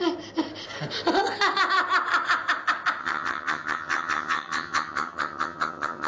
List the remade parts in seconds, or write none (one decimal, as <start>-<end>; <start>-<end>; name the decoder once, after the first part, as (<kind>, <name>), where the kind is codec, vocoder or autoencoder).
3.0-6.1 (vocoder, HiFi-GAN)

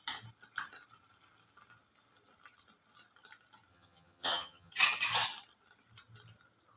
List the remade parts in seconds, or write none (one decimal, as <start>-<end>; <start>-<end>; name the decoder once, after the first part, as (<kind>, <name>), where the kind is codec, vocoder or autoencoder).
3.7-4.7 (vocoder, HiFi-GAN)

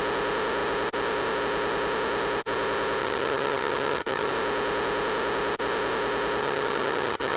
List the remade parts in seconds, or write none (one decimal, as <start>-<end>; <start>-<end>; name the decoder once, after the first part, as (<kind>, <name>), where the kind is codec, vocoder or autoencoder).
3.0-4.3 (vocoder, HiFi-GAN); 6.4-7.4

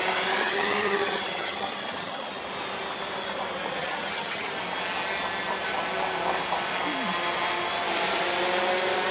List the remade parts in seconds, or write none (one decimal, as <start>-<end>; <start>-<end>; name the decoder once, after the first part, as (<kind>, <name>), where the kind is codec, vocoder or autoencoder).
0.4-2.4 (vocoder, HiFi-GAN); 3.8-4.5

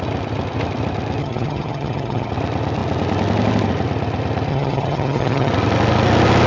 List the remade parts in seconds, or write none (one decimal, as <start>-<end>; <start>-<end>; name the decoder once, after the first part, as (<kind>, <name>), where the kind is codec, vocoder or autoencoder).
1.2-2.3 (vocoder, HiFi-GAN); 4.5-5.5

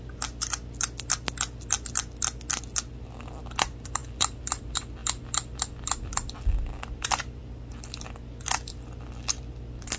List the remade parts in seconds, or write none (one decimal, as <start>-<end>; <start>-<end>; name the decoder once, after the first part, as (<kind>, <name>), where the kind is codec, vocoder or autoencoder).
none